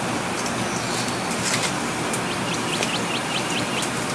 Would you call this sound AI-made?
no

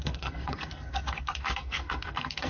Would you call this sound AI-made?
yes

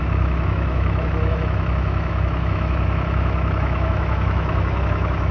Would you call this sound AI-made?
yes